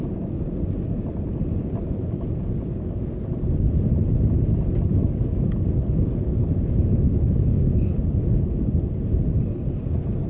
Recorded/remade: recorded